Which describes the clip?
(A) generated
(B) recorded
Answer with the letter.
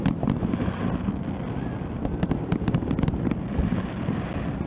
B